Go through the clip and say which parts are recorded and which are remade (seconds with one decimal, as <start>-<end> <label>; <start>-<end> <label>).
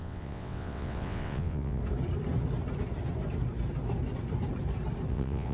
0.0-1.8 remade; 1.8-5.1 recorded; 5.1-5.5 remade